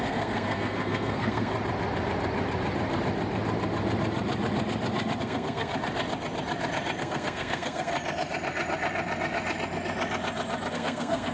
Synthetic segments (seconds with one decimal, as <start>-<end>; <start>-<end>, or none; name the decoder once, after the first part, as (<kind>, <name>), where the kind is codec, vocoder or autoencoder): 0.0-1.5 (codec, SNAC); 5.2-5.7; 7.0-7.9; 10.7-11.3